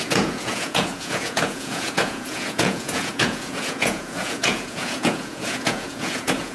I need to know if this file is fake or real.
fake